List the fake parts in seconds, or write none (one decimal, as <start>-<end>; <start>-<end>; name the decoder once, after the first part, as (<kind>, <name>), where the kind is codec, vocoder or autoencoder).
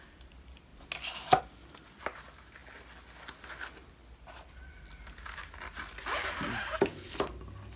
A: none